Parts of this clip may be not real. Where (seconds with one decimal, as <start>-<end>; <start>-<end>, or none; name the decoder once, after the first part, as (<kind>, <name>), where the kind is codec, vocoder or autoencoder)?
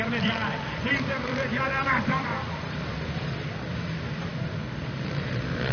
0.4-3.8 (vocoder, BigVGAN v2)